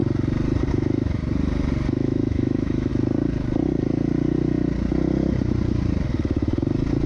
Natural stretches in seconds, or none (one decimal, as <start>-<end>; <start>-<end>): 0.0-0.7; 1.2-1.9; 2.9-7.1

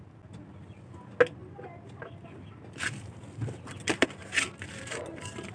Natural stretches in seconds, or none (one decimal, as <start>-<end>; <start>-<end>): 0.0-5.5

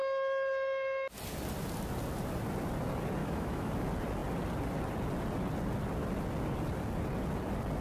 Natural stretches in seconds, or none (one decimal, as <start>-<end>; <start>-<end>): 0.0-3.2; 3.7-7.8

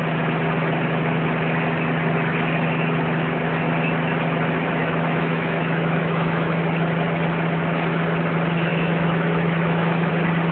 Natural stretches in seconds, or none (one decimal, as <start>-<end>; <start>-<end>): 0.0-4.8; 6.6-8.7; 10.1-10.5

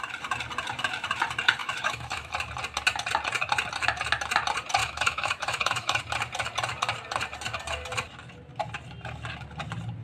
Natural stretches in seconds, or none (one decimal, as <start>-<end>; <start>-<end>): 0.0-1.6; 2.3-4.8; 6.0-10.0